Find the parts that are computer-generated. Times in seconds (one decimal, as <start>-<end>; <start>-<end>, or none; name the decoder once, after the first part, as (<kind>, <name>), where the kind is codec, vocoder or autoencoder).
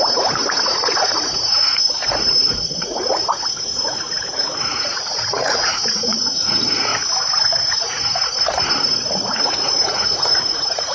0.0-6.9 (vocoder, Vocos); 7.6-10.9